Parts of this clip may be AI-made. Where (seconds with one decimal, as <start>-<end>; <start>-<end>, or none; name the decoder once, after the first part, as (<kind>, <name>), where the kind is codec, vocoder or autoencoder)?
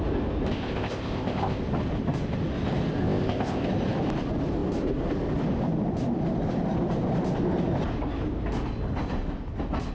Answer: 0.5-1.6 (codec, ZipCodec); 3.0-3.7